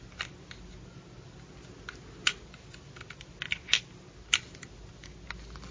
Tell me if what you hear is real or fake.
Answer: real